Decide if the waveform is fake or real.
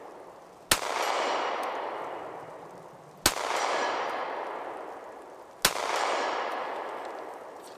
real